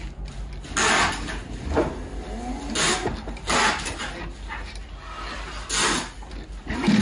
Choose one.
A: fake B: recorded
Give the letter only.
B